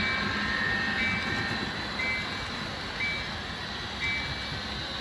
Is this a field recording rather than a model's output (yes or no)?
yes